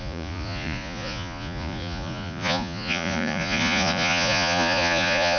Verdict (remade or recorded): remade